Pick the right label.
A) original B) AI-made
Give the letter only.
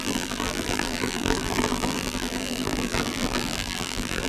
B